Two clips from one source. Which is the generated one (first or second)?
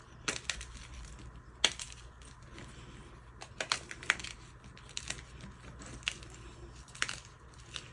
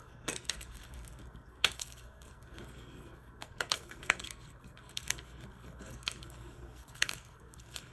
second